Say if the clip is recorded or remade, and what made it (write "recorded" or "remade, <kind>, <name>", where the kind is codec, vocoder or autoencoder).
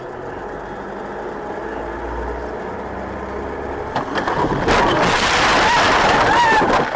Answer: recorded